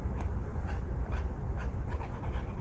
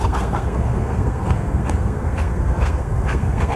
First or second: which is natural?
first